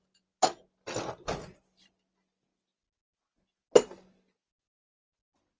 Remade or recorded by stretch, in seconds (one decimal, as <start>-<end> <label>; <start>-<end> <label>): 0.0-5.6 recorded